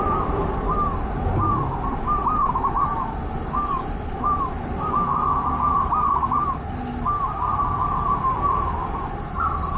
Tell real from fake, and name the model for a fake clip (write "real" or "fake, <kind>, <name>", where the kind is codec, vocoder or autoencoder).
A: fake, vocoder, BigVGAN v2